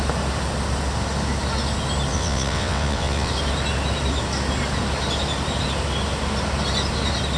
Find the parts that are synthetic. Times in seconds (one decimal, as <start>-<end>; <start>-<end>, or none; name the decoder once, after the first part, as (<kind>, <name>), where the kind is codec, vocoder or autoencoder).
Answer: 2.1-3.3 (vocoder, WaveNeXt)